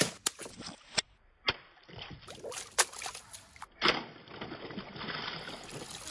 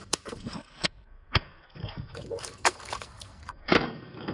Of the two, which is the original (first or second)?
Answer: first